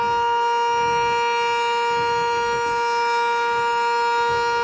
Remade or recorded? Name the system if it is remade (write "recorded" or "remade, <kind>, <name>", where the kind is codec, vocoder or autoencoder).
recorded